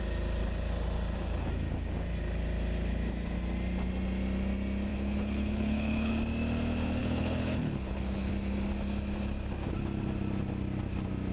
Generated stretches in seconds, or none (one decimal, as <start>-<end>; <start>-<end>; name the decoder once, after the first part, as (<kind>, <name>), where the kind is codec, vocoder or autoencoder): 4.9-6.1 (codec, HILCodec); 7.0-8.3